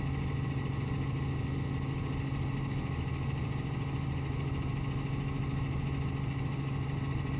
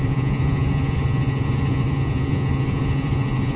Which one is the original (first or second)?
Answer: first